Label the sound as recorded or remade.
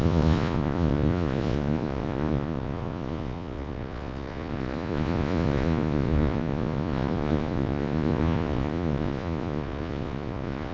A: remade